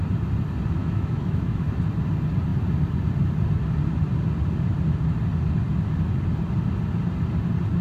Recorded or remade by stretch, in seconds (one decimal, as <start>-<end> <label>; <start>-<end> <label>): 0.0-0.8 recorded; 0.8-1.6 remade; 1.6-7.8 recorded